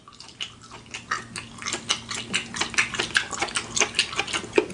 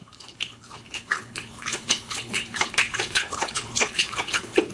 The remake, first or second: second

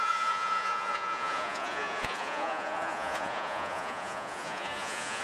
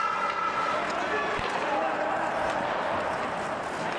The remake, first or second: first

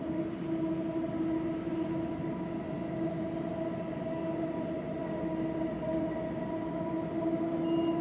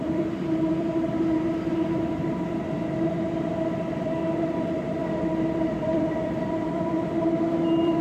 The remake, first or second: second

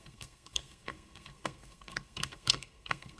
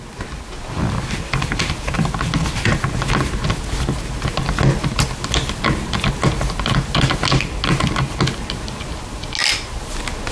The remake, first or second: first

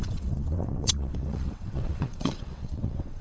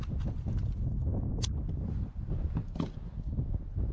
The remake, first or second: first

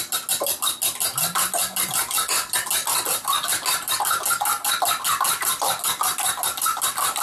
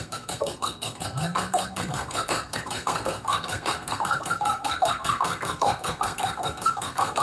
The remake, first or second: second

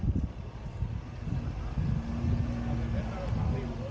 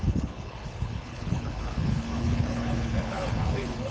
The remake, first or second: second